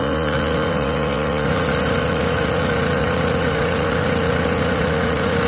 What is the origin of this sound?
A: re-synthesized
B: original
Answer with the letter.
A